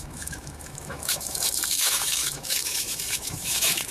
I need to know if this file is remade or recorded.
remade